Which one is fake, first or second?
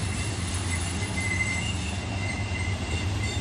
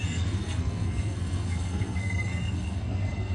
second